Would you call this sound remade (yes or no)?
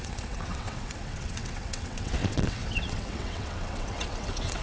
yes